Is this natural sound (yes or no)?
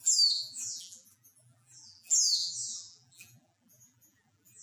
no